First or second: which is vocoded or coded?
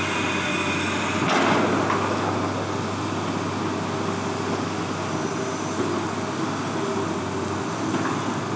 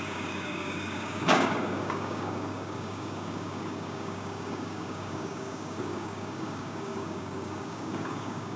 second